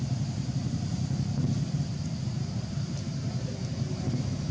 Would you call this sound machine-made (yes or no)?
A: no